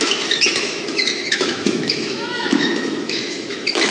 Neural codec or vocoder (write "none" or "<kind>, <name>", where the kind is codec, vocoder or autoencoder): autoencoder, DAC-VAE